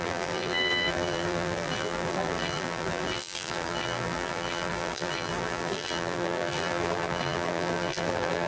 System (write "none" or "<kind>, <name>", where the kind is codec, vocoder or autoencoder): vocoder, BigVGAN v2